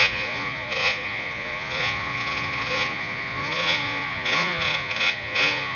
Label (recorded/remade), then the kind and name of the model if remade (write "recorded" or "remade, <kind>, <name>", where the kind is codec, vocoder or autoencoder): remade, vocoder, Vocos